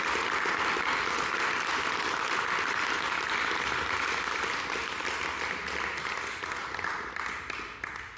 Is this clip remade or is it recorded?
recorded